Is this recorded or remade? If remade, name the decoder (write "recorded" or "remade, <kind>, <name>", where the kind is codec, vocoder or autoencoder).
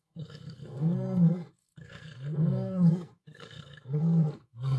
remade, codec, SNAC